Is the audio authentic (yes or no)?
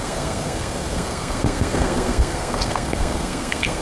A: no